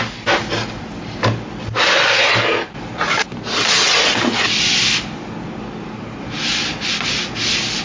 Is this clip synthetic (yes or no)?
no